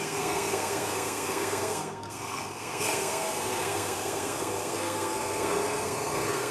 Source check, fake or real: fake